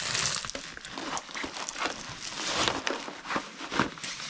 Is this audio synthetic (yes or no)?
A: no